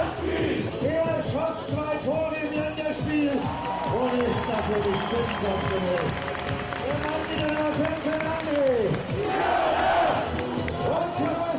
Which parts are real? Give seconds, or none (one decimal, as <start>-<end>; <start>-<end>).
0.0-11.6